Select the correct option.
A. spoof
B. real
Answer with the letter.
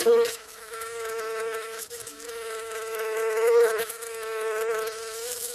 A